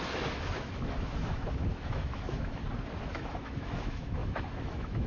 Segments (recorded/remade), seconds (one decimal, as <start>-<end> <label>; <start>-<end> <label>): 0.0-2.6 remade; 2.6-3.1 recorded; 3.1-5.1 remade